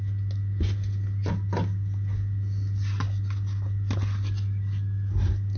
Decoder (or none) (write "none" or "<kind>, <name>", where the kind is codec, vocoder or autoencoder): none